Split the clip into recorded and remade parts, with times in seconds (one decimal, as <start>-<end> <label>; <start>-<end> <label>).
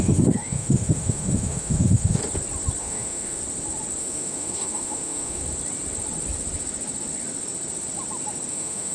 0.0-2.2 remade; 2.2-2.8 recorded; 2.8-3.4 remade; 3.4-4.0 recorded; 4.0-5.4 remade; 5.4-8.5 recorded; 8.5-8.9 remade